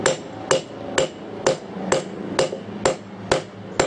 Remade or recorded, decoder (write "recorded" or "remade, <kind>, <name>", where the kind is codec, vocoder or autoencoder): recorded